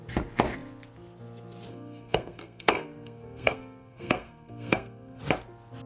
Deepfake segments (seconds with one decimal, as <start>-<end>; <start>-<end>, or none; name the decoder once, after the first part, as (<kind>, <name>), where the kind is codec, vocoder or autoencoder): 1.7-5.2 (codec, SNAC)